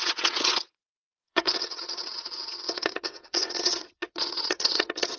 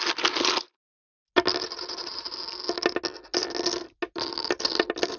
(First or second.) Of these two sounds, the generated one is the first